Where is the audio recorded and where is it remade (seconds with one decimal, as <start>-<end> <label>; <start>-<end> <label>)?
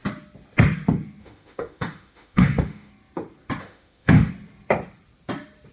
0.0-1.2 recorded; 1.2-2.9 remade; 2.9-3.6 recorded; 3.6-4.3 remade; 4.3-5.7 recorded